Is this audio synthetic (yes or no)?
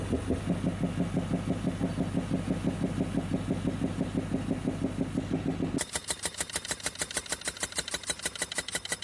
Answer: no